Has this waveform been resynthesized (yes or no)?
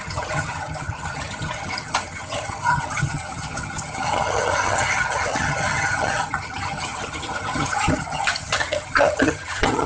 yes